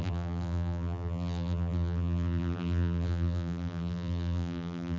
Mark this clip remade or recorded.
remade